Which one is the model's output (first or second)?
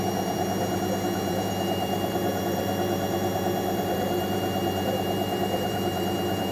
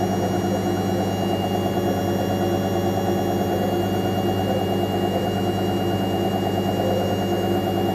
first